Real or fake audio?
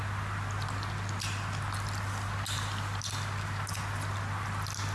real